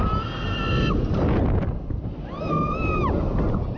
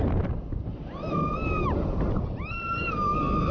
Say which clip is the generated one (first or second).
second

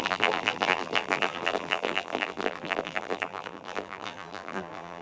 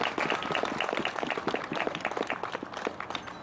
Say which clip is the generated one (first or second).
first